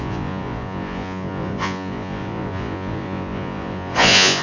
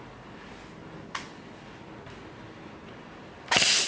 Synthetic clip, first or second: first